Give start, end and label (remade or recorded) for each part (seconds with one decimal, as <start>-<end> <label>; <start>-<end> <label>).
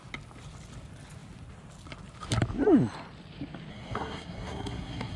0.0-3.7 recorded; 3.7-5.2 remade